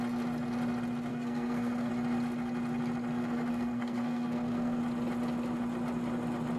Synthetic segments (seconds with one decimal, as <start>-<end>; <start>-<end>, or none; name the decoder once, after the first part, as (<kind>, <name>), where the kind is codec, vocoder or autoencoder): 1.1-1.9 (codec, SNAC); 3.2-4.8